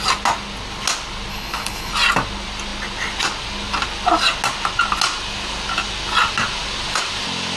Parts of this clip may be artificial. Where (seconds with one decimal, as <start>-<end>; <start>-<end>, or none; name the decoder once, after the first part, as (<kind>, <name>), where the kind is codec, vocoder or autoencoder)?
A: 1.3-1.9 (codec, HILCodec)